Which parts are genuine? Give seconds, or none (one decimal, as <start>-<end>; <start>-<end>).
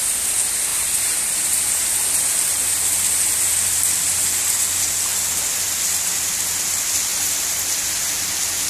0.0-0.7; 4.2-5.1; 6.3-8.7